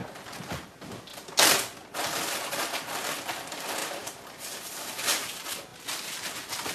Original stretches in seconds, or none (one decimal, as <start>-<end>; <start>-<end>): 0.5-3.8; 5.0-6.7